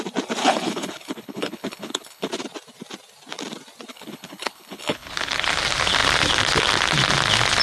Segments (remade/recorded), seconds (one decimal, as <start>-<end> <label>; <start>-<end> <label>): 0.0-0.4 recorded; 0.4-2.3 remade; 2.3-3.9 recorded; 3.9-5.5 remade; 5.5-7.6 recorded